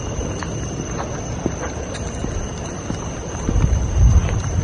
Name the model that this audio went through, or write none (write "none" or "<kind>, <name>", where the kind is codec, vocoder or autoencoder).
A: none